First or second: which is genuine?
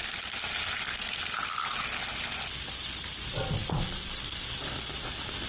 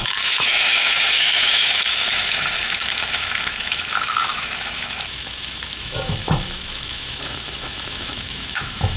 first